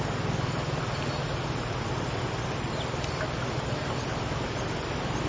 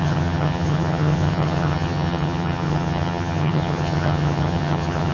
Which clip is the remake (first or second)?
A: second